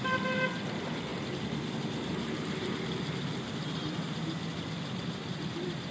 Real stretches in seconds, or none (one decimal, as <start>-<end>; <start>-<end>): 0.0-5.2